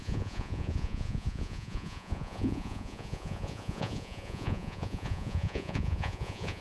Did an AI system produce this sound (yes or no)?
yes